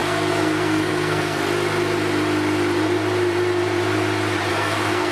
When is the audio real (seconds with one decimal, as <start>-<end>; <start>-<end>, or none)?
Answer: 1.4-4.5